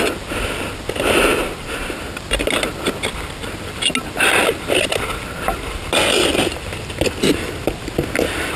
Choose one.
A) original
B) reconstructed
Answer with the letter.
A